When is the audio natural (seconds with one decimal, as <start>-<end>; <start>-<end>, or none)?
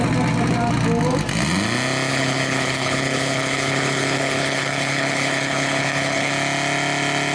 0.0-2.1; 6.3-7.3